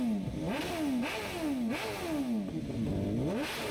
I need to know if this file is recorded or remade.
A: recorded